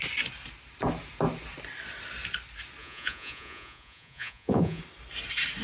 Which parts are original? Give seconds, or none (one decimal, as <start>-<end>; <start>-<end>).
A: 0.0-2.8; 4.8-5.6